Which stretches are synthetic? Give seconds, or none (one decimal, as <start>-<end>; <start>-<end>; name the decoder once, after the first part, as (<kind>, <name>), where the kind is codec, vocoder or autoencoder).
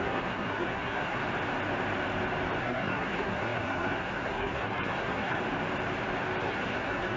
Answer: 0.0-1.2 (codec, SNAC); 2.6-5.4; 6.4-7.2